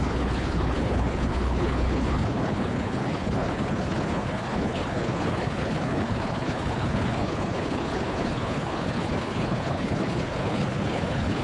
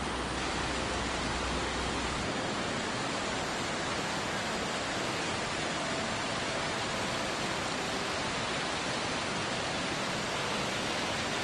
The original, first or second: second